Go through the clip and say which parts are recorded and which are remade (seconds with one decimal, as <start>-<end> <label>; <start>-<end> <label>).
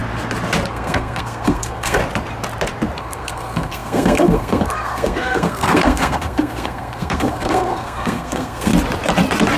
0.0-0.7 recorded; 0.7-2.0 remade; 2.0-3.0 recorded; 3.0-8.7 remade; 8.7-9.6 recorded